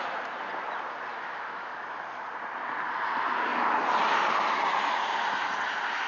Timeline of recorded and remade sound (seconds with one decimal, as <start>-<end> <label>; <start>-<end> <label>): 0.0-1.1 recorded; 1.1-1.8 remade; 1.8-6.1 recorded